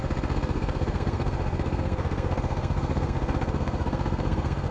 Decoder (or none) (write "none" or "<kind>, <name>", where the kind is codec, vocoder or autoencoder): codec, SNAC